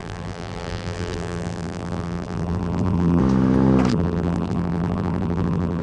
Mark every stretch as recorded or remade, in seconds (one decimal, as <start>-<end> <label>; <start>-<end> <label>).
0.0-3.2 remade; 3.2-3.9 recorded; 3.9-5.8 remade